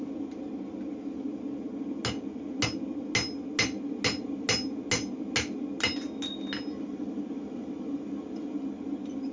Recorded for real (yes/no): yes